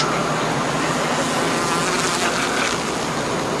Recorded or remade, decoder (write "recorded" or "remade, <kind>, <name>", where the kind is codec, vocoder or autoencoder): recorded